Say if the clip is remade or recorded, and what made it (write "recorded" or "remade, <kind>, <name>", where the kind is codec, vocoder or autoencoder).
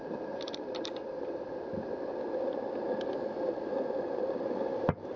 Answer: recorded